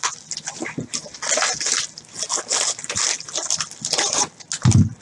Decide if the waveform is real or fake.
real